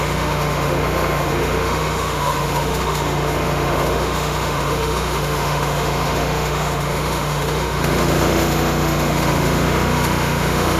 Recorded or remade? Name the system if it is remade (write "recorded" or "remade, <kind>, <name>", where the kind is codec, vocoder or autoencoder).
remade, autoencoder, DAC-VAE